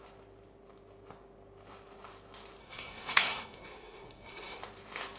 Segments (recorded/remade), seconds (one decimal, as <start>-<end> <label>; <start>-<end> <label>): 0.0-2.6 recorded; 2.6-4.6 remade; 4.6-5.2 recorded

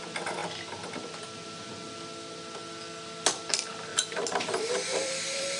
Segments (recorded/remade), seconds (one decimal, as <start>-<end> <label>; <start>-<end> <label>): 0.0-3.9 recorded; 3.9-5.6 remade

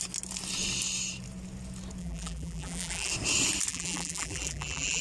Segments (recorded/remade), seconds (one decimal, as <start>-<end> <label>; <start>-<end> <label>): 0.0-2.0 recorded; 2.0-3.1 remade; 3.1-3.7 recorded; 3.7-5.0 remade

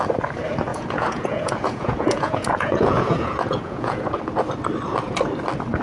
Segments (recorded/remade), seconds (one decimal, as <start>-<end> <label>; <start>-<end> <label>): 0.0-0.7 recorded; 0.7-4.2 remade; 4.2-5.8 recorded

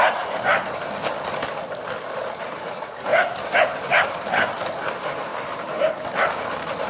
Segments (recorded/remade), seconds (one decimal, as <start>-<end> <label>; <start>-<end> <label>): 0.0-1.0 remade; 1.0-2.4 recorded; 2.4-3.1 remade; 3.1-3.6 recorded; 3.6-5.3 remade; 5.3-6.4 recorded; 6.4-6.9 remade

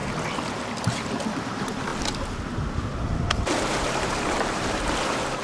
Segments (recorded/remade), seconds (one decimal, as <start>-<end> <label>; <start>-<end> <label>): 0.0-0.8 recorded; 0.8-1.9 remade; 1.9-2.7 recorded; 2.7-5.4 remade